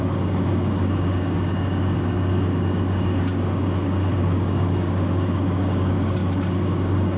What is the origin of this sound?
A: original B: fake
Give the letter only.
B